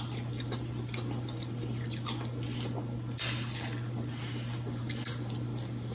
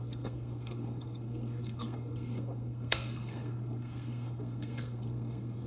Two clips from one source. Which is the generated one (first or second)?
second